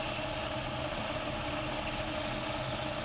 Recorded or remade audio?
recorded